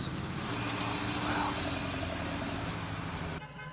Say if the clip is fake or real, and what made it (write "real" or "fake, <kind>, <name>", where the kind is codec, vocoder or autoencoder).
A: real